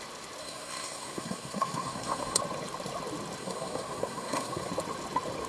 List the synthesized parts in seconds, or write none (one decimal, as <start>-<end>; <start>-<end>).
0.4-2.4; 3.4-4.7